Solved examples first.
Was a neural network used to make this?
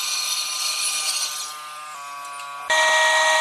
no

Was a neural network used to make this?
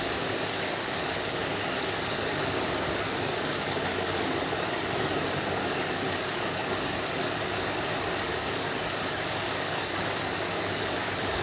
yes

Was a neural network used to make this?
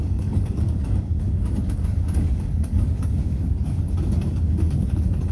yes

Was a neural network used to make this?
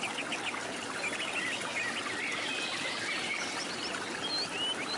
no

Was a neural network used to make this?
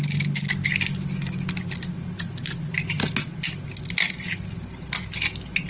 no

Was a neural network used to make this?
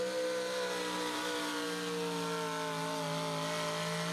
no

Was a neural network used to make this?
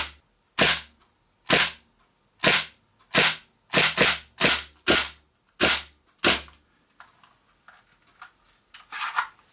no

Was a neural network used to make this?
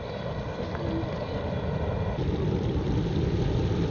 no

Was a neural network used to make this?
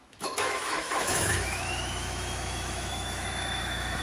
yes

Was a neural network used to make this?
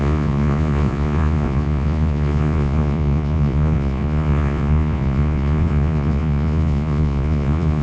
yes